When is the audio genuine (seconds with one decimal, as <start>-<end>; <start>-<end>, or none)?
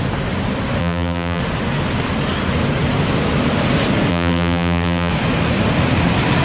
0.0-0.8; 1.4-4.1; 5.1-6.4